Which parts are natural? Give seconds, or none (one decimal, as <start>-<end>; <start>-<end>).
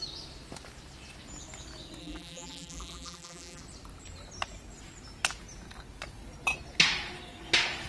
0.0-2.0; 3.6-7.9